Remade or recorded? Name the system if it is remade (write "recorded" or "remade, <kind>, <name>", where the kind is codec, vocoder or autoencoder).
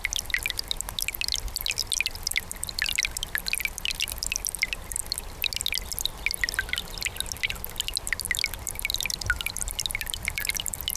recorded